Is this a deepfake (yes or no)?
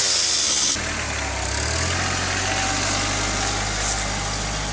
no